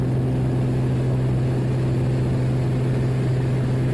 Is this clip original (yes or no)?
yes